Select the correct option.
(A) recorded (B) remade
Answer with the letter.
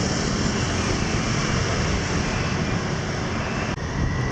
A